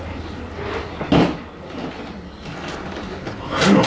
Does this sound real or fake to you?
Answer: real